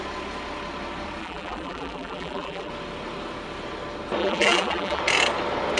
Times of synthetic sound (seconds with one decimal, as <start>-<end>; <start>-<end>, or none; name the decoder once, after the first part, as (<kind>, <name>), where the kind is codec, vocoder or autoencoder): 1.2-2.7 (vocoder, BigVGAN v2); 4.2-5.0

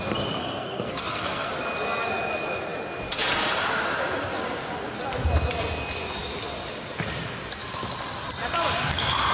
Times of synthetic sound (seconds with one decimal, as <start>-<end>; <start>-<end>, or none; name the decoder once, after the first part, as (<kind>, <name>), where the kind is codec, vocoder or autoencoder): 0.4-1.5 (codec, SNAC)